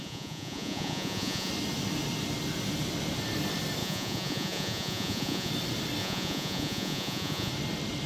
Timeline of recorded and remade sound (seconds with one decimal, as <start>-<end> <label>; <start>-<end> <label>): 0.0-1.5 remade; 1.5-3.8 recorded; 3.8-5.5 remade; 5.5-6.0 recorded; 6.0-7.5 remade; 7.5-8.1 recorded